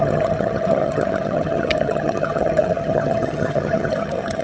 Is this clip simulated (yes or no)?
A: yes